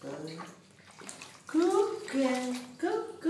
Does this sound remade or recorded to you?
recorded